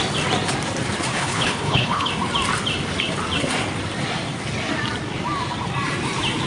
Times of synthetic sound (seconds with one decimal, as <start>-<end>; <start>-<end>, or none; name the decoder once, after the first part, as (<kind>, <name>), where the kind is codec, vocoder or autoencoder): 1.1-2.1 (codec, HILCodec)